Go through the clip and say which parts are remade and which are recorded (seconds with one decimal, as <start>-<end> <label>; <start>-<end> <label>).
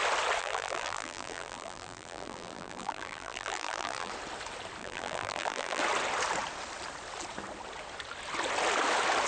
0.0-0.4 recorded; 0.4-4.1 remade; 4.1-4.8 recorded; 4.8-5.8 remade; 5.8-9.3 recorded